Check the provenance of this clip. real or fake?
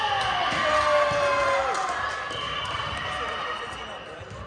real